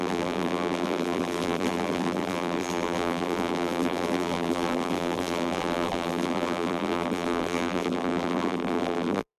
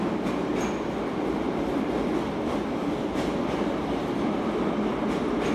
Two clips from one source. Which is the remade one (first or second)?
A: first